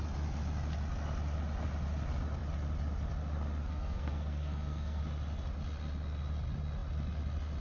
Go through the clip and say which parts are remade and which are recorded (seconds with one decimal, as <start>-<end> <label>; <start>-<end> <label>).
0.0-3.6 recorded; 3.6-5.0 remade; 5.0-7.6 recorded